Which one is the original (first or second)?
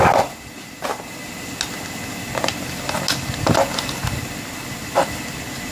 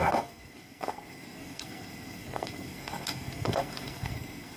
first